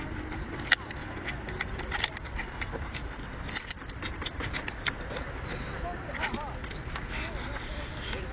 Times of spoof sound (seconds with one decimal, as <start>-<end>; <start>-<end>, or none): 1.0-5.2